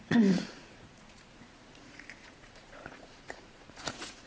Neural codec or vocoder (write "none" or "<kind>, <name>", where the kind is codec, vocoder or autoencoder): vocoder, Vocos